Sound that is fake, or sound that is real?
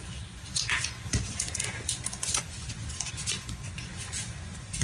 fake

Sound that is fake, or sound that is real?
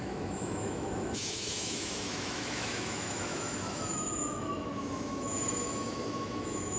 fake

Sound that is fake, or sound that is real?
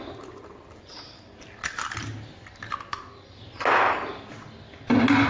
real